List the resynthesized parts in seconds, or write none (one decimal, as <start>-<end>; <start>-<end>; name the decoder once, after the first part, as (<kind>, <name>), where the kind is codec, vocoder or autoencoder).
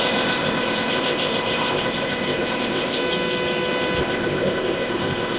0.0-3.0 (codec, ZipCodec); 4.0-5.4